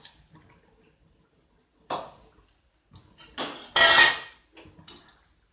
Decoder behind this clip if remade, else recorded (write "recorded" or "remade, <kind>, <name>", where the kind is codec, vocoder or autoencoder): recorded